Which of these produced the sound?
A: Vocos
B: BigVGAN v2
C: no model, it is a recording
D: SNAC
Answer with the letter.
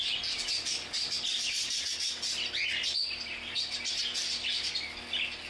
C